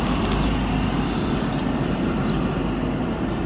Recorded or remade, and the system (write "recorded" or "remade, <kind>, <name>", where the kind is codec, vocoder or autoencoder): recorded